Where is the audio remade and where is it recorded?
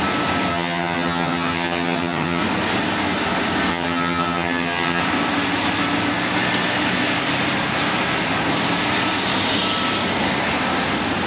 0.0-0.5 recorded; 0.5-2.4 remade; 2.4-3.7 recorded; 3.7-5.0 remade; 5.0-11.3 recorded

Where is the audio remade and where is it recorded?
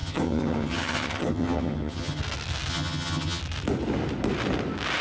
0.0-2.2 remade; 2.2-2.7 recorded; 2.7-3.4 remade; 3.4-5.0 recorded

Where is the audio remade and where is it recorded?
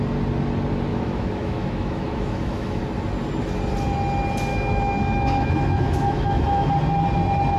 0.0-0.9 recorded; 0.9-2.8 remade; 2.8-4.5 recorded; 4.5-6.7 remade; 6.7-7.6 recorded